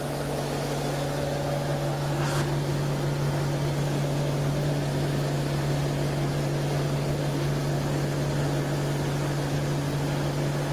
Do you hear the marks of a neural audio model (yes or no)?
no